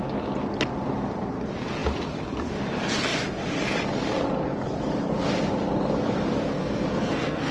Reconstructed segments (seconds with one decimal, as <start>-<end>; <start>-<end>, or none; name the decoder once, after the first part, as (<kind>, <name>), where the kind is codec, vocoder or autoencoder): 6.6-7.5 (codec, SNAC)